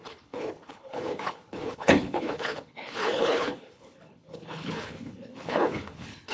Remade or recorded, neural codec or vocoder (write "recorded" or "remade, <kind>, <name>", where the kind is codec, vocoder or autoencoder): remade, codec, HILCodec